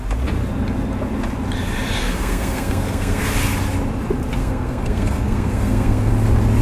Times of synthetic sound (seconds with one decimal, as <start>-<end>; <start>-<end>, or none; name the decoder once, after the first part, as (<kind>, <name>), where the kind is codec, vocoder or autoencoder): 2.0-3.2 (codec, SNAC); 4.4-6.1